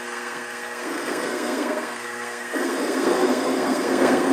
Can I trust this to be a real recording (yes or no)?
no